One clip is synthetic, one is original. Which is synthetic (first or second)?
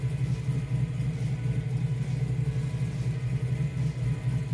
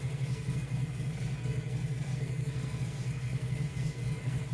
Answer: second